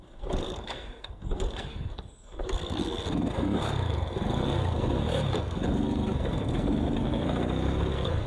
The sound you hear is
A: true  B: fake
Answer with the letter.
B